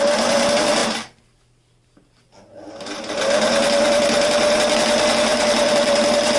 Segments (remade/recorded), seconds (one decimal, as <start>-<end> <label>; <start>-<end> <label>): 0.0-5.3 recorded; 5.3-6.0 remade; 6.0-6.4 recorded